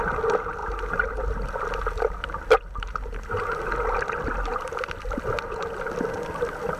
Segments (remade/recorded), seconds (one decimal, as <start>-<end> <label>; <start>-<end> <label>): 0.0-6.8 recorded